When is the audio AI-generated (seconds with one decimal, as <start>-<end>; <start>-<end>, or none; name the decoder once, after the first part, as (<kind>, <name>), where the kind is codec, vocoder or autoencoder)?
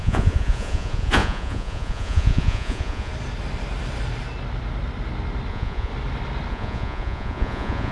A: 0.0-3.1 (vocoder, Vocos); 5.5-5.9; 6.5-7.9